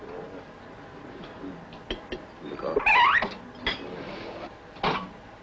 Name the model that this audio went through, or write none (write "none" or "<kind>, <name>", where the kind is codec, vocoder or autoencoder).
none